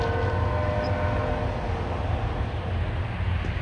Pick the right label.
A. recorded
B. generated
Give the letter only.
A